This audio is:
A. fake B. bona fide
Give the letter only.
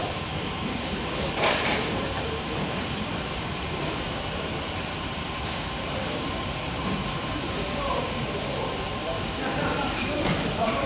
A